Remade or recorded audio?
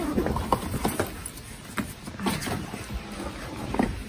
recorded